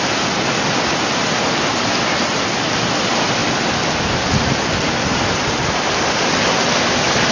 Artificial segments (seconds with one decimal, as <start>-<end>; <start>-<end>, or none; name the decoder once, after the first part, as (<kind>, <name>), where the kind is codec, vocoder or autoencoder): none